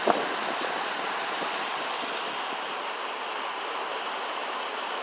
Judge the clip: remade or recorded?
recorded